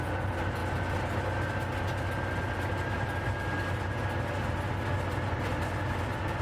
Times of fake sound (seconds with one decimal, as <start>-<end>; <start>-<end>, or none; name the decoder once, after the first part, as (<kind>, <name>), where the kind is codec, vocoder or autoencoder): none